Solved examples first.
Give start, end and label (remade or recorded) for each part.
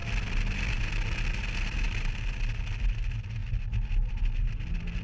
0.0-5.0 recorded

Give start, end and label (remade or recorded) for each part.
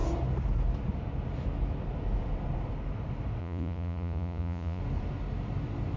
0.0-3.4 recorded; 3.4-4.8 remade; 4.8-6.0 recorded